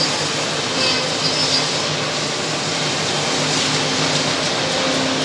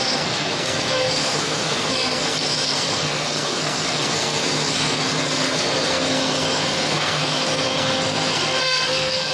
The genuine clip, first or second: first